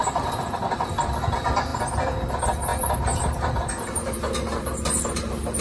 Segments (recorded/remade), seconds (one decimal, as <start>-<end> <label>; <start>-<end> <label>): 0.0-5.6 remade